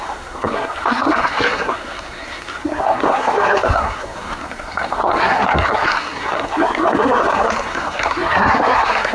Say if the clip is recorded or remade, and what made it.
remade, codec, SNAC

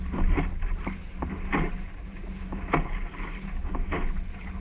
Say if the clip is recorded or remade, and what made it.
recorded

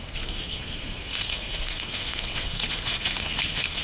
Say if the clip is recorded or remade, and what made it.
remade, codec, SNAC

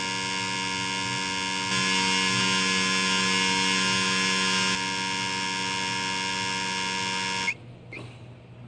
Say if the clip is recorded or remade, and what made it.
recorded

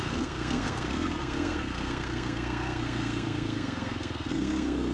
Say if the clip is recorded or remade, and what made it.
remade, codec, SNAC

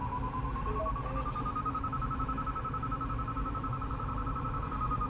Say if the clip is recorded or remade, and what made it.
recorded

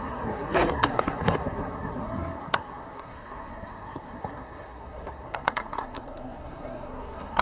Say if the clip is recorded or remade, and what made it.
remade, codec, SNAC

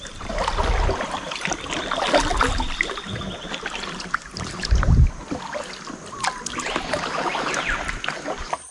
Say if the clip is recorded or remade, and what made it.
recorded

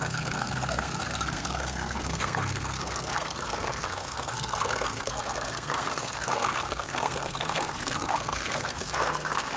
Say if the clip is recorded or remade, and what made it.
remade, codec, SNAC